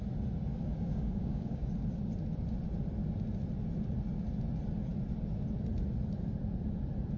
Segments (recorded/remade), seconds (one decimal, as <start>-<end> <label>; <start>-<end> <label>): 0.0-0.5 recorded; 0.5-1.7 remade; 1.7-7.2 recorded